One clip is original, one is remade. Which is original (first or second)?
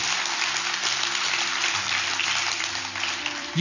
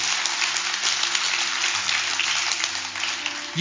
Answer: second